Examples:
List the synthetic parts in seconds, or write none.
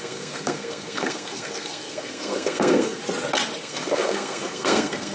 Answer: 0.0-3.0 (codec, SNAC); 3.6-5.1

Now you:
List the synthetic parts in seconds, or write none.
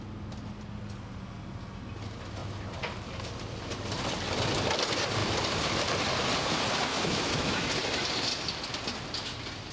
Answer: 6.9-7.7 (autoencoder, DAC-VAE)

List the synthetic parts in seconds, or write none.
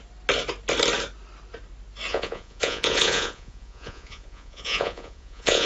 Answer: 2.1-5.7 (vocoder, Vocos)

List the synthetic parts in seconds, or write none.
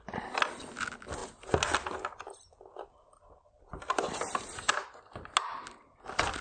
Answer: none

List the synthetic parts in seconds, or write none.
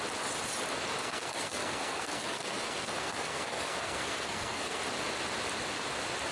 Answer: 1.0-4.8 (codec, SNAC)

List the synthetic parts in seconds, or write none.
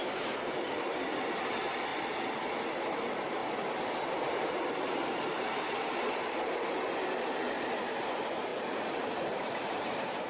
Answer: 0.0-1.9 (vocoder, BigVGAN v2); 2.5-3.4; 4.2-5.3; 7.4-8.5; 9.2-10.3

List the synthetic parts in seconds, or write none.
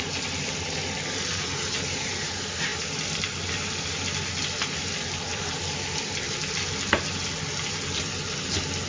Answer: 2.7-6.0 (vocoder, BigVGAN v2)